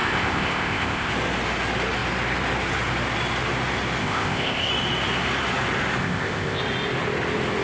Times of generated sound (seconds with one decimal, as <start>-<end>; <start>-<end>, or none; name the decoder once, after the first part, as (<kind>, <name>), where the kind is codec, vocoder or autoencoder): 0.0-1.1 (codec, ZipCodec); 4.0-4.7; 6.0-6.6